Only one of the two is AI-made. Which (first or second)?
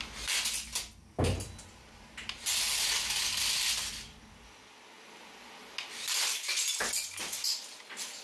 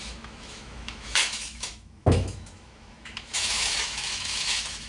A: second